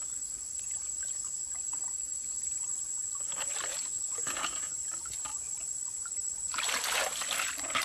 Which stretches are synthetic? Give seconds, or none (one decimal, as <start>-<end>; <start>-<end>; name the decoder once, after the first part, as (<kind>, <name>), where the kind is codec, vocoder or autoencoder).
3.7-4.8 (vocoder, Vocos)